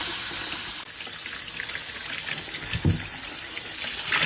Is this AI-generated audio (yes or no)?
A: no